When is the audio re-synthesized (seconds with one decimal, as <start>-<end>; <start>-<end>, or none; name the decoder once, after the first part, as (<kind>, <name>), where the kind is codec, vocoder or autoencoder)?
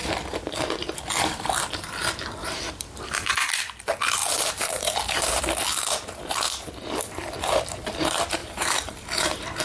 2.4-3.5 (vocoder, BigVGAN v2); 4.2-5.4; 8.4-9.6